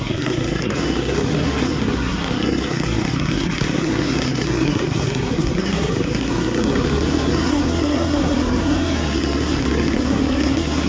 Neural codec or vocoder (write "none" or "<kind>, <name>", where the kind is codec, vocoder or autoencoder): codec, SNAC